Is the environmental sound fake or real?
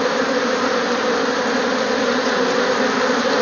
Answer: real